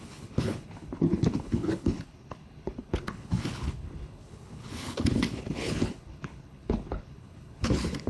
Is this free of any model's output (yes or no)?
no